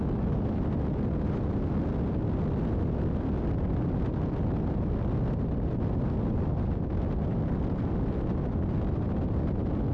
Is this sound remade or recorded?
recorded